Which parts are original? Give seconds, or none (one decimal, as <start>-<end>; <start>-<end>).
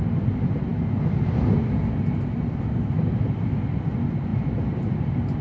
0.0-5.4